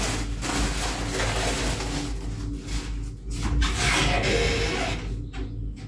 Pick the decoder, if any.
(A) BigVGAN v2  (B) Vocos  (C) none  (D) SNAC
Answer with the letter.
C